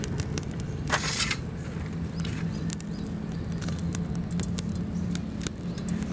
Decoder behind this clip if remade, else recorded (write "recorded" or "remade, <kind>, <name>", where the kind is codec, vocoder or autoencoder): recorded